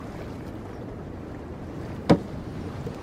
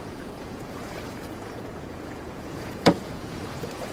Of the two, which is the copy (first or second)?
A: second